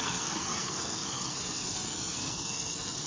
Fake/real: fake